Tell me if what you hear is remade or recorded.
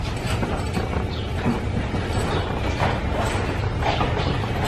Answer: recorded